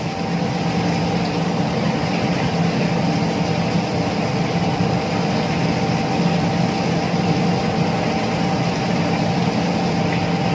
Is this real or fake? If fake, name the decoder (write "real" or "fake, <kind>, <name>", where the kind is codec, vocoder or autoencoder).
real